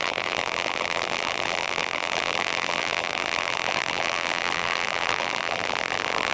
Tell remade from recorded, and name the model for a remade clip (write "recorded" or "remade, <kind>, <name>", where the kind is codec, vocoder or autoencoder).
remade, vocoder, BigVGAN v2